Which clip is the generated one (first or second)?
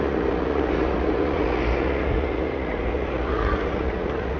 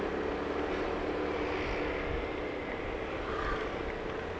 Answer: first